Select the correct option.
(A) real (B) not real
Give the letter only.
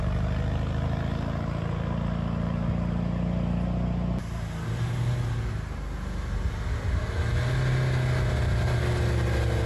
A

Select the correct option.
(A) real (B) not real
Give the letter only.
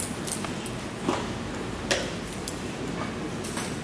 A